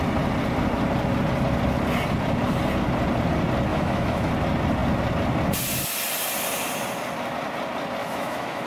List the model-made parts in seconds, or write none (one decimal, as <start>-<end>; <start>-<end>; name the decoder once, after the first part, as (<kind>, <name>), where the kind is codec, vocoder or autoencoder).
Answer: 3.7-4.3 (autoencoder, DAC-VAE); 8.0-8.7